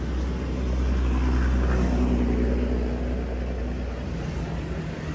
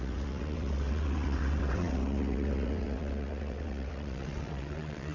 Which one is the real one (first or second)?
first